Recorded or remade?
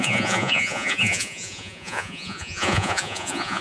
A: remade